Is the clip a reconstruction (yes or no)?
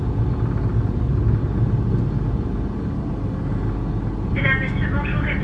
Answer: no